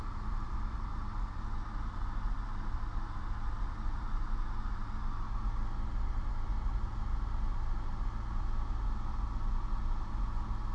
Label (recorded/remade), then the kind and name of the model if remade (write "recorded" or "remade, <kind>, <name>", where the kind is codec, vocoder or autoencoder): recorded